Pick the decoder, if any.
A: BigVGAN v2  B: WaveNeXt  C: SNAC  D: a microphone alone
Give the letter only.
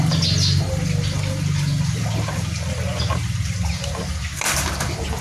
D